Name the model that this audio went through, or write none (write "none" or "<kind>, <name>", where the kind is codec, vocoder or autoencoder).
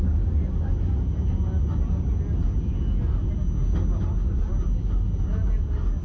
none